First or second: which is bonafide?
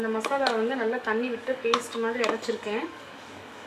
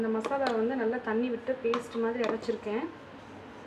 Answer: second